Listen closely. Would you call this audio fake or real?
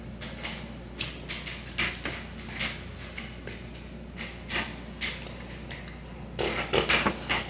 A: real